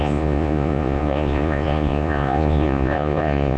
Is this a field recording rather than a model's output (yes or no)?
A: no